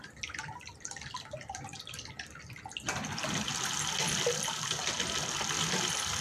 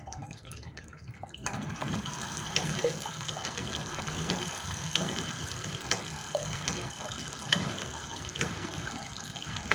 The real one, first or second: first